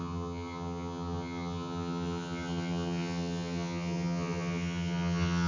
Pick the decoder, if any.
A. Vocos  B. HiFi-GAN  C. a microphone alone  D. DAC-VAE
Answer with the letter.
B